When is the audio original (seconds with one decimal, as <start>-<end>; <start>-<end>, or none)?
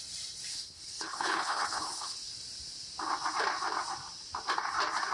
0.0-0.5; 2.3-5.1